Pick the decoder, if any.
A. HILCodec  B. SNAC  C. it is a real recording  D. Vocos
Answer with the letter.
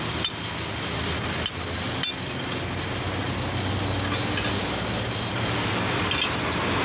C